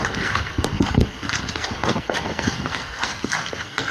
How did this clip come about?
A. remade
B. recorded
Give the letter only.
A